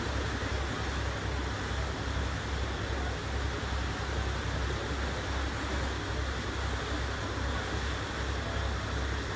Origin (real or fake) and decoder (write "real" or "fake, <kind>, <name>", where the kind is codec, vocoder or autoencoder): real